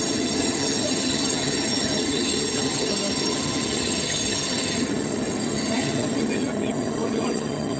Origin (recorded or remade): remade